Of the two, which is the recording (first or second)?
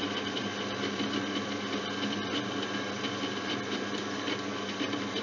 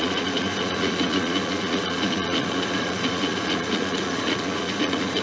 first